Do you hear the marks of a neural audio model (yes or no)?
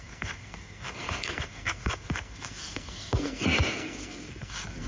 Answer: yes